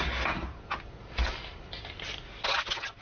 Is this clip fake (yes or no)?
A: no